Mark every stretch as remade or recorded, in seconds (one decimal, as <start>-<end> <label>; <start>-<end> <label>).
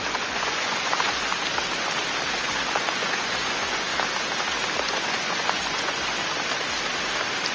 0.0-1.3 remade; 1.3-2.3 recorded; 2.3-3.9 remade; 3.9-4.9 recorded; 4.9-6.2 remade; 6.2-7.5 recorded